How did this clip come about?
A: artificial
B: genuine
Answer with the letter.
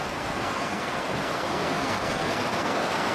A